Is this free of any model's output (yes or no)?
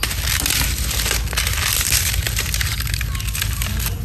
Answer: yes